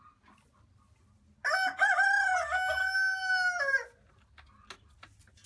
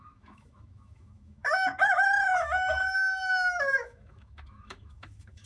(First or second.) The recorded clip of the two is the first